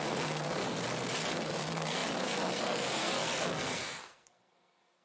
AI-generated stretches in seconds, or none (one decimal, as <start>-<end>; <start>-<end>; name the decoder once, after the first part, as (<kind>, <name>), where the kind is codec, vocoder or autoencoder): 0.0-0.6 (codec, SNAC); 1.3-5.0